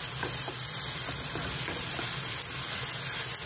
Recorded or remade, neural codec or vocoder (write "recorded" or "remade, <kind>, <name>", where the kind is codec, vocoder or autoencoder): recorded